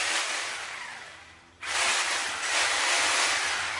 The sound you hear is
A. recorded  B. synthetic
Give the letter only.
A